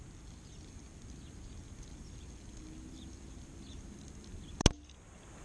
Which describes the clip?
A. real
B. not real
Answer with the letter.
A